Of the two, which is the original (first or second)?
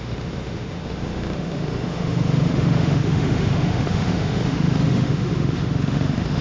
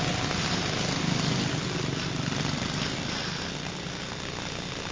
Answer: second